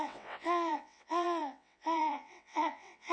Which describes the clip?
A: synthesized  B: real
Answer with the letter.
A